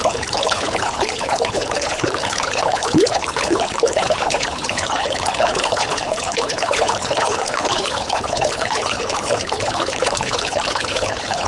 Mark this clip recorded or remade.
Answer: remade